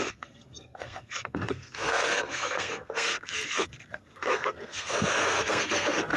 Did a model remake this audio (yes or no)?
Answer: yes